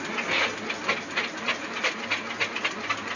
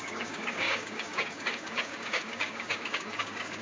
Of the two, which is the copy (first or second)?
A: second